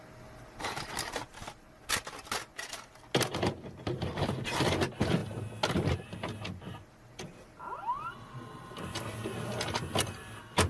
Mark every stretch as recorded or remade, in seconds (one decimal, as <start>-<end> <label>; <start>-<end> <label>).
0.0-10.7 recorded